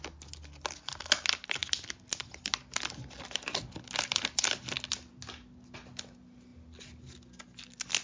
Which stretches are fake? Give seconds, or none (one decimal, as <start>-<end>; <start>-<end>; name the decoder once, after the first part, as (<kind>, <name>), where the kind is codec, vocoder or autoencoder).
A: none

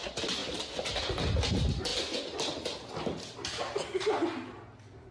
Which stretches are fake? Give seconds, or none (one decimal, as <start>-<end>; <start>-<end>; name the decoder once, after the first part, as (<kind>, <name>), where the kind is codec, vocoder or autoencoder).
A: none

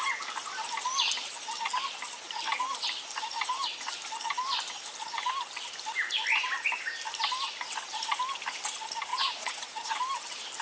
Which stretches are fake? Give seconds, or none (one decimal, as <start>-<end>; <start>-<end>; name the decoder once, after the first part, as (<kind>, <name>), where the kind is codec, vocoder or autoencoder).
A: 9.1-10.0 (vocoder, Vocos)

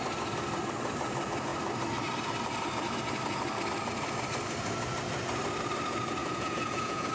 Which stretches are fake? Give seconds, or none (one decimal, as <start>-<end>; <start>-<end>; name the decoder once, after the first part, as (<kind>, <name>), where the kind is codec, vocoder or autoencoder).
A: 6.2-7.1 (vocoder, Vocos)

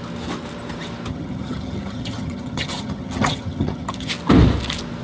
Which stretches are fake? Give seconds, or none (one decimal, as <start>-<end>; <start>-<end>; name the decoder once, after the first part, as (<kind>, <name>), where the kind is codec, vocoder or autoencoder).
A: 1.1-4.1 (vocoder, HiFi-GAN)

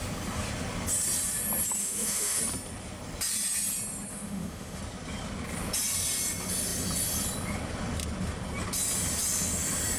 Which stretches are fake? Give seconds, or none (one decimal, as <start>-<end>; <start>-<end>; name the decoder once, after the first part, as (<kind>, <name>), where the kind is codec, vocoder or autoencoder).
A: 1.8-2.4 (autoencoder, DAC-VAE); 4.1-4.8

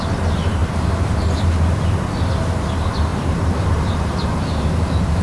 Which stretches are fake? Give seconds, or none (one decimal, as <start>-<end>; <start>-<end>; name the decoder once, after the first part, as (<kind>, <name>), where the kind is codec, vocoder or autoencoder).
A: 0.6-1.2 (vocoder, BigVGAN v2); 3.1-4.5

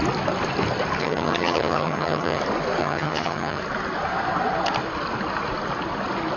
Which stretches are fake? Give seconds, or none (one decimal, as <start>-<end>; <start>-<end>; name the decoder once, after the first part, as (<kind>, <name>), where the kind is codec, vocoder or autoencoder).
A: 1.0-2.4 (vocoder, HiFi-GAN); 2.8-3.6